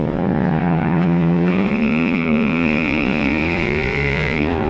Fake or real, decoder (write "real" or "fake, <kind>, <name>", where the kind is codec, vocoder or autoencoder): fake, vocoder, Vocos